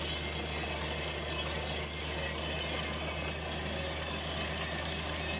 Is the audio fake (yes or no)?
no